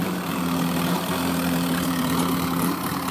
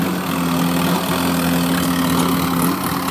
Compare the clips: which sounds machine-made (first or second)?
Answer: first